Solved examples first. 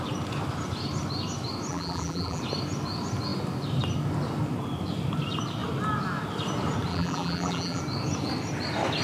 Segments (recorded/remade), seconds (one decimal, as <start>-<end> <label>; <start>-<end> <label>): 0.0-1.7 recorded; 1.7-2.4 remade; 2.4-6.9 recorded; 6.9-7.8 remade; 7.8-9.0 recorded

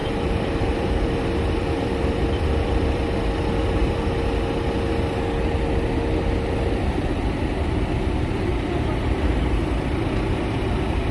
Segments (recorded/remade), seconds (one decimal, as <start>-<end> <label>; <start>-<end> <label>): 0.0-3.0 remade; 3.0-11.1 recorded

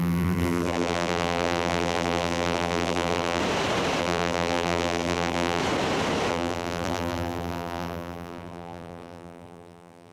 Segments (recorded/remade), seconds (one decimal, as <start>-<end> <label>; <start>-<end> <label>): 0.0-3.4 remade; 3.4-4.0 recorded; 4.0-5.6 remade; 5.6-6.3 recorded; 6.3-10.1 remade